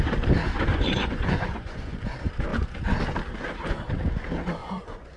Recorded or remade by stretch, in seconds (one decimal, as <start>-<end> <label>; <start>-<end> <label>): 0.0-0.7 recorded; 0.7-2.0 remade; 2.0-4.6 recorded; 4.6-5.2 remade